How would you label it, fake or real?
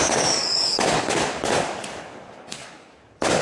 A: fake